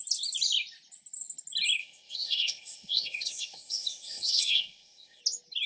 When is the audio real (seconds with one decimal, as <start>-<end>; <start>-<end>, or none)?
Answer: 0.0-1.8; 5.2-5.7